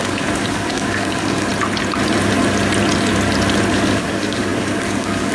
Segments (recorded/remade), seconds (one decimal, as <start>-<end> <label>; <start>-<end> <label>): 0.0-1.5 remade; 1.5-3.7 recorded; 3.7-5.3 remade